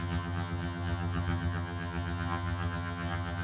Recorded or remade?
remade